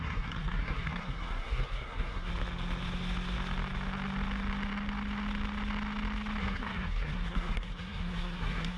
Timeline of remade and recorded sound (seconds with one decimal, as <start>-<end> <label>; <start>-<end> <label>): 0.0-2.3 remade; 2.3-6.4 recorded; 6.4-8.8 remade